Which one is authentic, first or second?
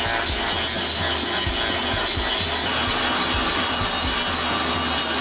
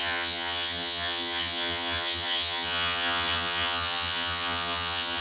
first